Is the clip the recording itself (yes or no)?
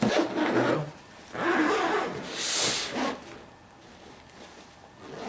yes